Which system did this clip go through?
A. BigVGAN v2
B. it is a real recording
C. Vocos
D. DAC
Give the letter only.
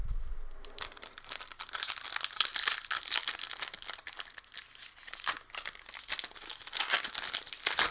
B